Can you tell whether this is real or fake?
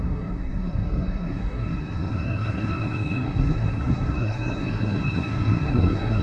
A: fake